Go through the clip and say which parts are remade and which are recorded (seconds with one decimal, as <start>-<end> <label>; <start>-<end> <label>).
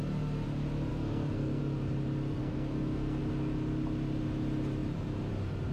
0.0-0.9 recorded; 0.9-1.6 remade; 1.6-2.4 recorded; 2.4-3.2 remade; 3.2-5.7 recorded